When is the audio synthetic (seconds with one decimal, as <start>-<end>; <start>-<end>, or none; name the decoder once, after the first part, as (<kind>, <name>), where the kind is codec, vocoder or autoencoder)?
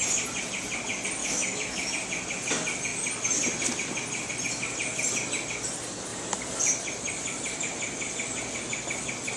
1.2-1.9 (autoencoder, DAC-VAE)